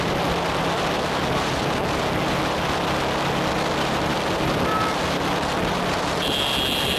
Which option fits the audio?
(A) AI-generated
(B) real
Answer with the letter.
B